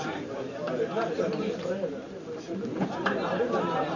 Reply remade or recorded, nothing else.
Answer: remade